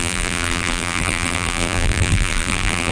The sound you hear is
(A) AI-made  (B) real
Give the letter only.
A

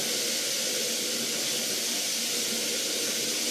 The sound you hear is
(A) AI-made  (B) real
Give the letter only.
B